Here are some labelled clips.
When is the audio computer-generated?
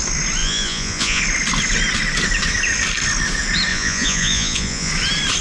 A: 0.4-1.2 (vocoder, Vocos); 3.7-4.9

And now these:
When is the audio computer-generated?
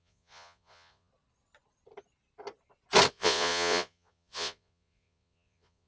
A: 0.0-1.1 (vocoder, Vocos); 3.1-5.9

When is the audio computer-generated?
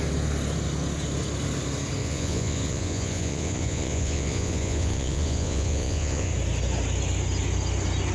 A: 2.0-6.3 (vocoder, Vocos)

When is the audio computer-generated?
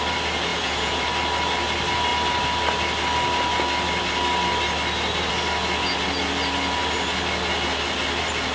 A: 0.5-1.0 (vocoder, Vocos)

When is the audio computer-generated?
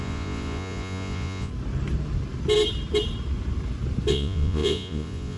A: 0.0-1.5 (vocoder, Vocos); 4.1-5.4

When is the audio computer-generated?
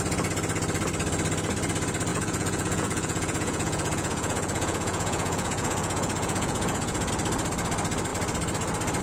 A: 2.1-7.1 (vocoder, Vocos)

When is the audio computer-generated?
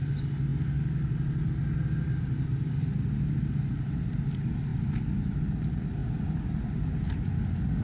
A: none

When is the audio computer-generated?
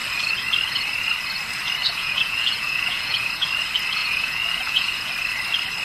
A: 1.8-3.5 (vocoder, Vocos); 4.0-5.1